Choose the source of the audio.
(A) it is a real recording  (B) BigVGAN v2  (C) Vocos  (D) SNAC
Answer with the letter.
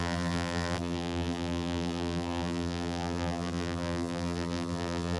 B